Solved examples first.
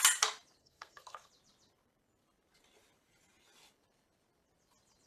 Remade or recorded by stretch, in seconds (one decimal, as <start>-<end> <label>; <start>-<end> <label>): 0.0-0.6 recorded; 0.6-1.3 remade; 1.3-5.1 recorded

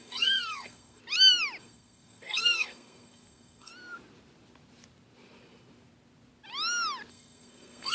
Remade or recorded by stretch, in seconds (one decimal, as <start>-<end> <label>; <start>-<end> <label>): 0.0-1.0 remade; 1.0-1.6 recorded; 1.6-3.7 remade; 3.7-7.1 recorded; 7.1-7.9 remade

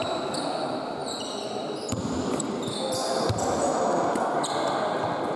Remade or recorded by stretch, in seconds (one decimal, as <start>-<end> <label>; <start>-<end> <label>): 0.0-5.4 recorded

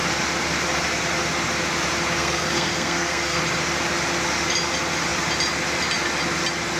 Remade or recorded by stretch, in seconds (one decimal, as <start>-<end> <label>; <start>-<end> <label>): 0.0-2.2 recorded; 2.2-3.4 remade; 3.4-6.8 recorded

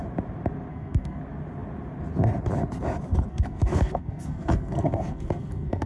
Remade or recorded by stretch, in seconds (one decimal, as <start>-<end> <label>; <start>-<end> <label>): 0.0-0.7 recorded; 0.7-1.2 remade; 1.2-3.3 recorded; 3.3-5.9 remade